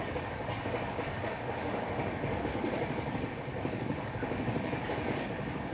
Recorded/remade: remade